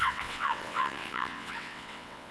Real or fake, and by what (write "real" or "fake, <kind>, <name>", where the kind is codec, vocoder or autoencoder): fake, vocoder, WaveNeXt